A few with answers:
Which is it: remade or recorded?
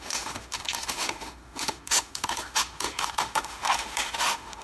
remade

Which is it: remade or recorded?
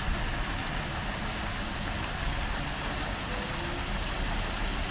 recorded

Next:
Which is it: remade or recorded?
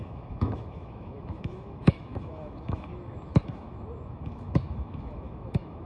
remade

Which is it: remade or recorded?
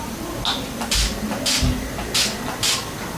recorded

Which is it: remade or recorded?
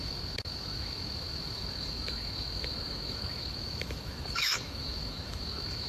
remade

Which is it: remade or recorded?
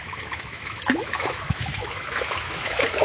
remade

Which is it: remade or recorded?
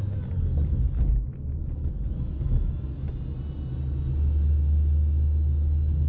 recorded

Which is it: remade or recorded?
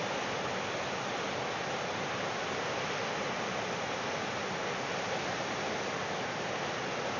recorded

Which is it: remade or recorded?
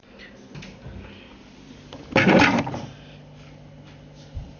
recorded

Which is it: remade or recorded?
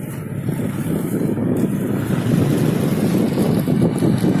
recorded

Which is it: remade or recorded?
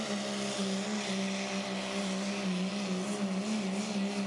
recorded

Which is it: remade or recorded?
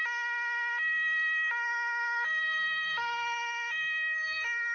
remade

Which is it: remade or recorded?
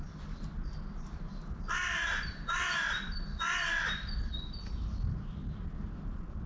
recorded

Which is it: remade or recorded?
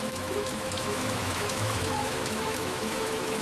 remade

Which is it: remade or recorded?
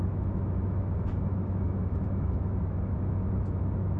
remade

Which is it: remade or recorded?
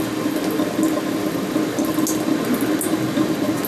recorded